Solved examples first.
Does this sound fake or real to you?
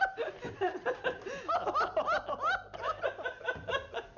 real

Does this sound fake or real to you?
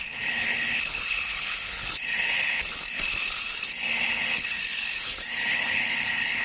fake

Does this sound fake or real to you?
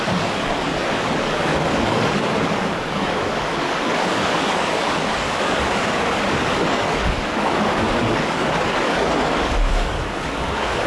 fake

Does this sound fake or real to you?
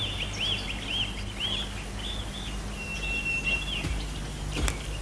real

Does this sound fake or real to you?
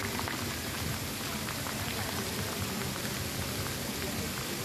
real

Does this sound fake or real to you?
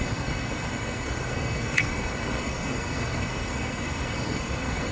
fake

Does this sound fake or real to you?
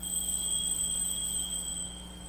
real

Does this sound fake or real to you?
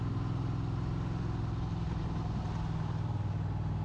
real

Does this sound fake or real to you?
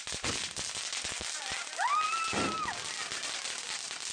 real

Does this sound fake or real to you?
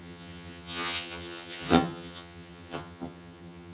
fake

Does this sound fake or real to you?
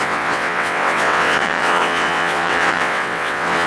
fake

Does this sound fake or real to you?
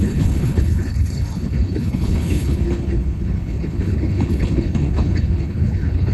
fake